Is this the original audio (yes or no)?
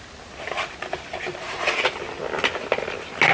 yes